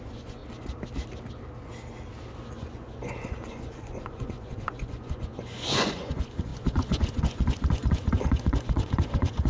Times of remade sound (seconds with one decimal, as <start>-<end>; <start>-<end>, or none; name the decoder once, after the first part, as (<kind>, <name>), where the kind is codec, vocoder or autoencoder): 0.0-0.4 (vocoder, Vocos); 2.5-9.5